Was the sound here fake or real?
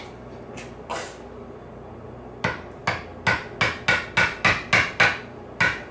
real